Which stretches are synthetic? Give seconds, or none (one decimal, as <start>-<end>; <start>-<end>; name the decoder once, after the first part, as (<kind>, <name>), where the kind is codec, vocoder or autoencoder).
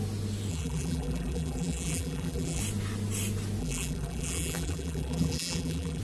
0.5-2.6 (vocoder, BigVGAN v2); 3.6-6.0